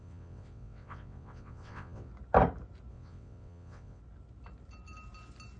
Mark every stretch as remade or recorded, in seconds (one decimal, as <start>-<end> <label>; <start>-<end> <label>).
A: 0.0-2.1 remade; 2.1-2.9 recorded; 2.9-4.0 remade; 4.0-5.6 recorded